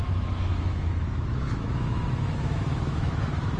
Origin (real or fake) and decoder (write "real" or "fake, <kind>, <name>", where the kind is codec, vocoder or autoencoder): fake, autoencoder, DAC-VAE